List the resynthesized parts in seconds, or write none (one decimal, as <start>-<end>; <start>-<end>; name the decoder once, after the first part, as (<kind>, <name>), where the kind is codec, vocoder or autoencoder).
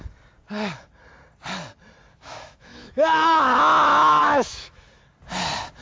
2.1-3.4 (autoencoder, DAC-VAE); 4.2-4.9